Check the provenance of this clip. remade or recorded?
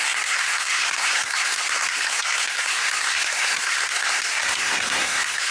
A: remade